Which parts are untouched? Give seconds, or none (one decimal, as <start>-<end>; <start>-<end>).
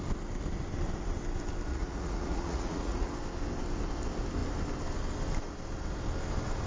0.0-1.7; 3.1-6.7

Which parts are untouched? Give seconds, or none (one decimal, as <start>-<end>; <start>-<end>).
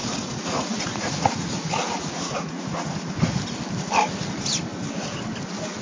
3.4-5.8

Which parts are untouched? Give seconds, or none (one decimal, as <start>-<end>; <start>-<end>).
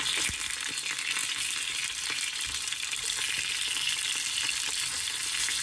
0.0-5.6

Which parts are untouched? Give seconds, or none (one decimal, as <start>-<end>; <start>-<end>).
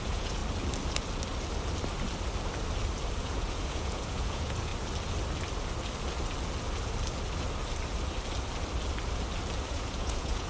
0.4-3.2; 4.7-9.7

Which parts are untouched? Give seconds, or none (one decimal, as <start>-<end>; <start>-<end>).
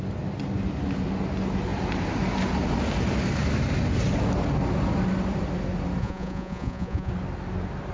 0.0-6.0; 7.1-7.9